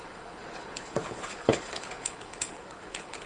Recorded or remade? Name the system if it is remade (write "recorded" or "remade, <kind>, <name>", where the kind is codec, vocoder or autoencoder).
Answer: remade, codec, HILCodec